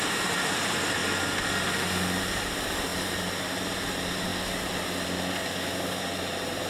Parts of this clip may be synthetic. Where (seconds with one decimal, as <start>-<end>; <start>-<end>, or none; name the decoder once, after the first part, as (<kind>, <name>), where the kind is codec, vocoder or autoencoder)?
0.0-1.0 (vocoder, BigVGAN v2); 2.2-4.3; 6.2-6.7